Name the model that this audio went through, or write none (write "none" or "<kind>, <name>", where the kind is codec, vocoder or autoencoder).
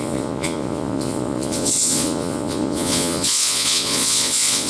vocoder, Vocos